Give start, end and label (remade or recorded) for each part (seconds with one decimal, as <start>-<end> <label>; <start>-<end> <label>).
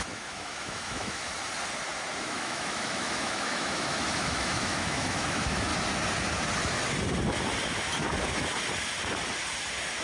0.0-1.3 remade; 1.3-2.2 recorded; 2.2-5.7 remade; 5.7-10.0 recorded